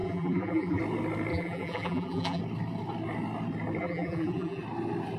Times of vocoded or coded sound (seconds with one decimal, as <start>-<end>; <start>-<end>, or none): 0.0-0.8; 1.3-2.4; 3.8-4.6